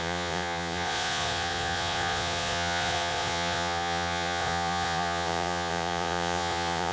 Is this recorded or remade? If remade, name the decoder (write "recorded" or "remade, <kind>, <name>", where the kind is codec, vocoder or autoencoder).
remade, vocoder, Vocos